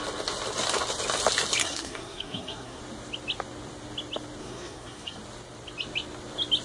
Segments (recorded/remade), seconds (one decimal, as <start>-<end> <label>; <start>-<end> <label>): 0.0-1.6 recorded; 1.6-2.8 remade; 2.8-4.4 recorded; 4.4-5.2 remade; 5.2-6.6 recorded